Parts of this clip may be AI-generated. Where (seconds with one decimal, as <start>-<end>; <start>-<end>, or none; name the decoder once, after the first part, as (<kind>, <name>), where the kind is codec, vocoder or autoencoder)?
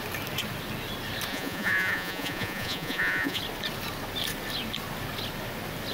1.3-3.4 (vocoder, Vocos)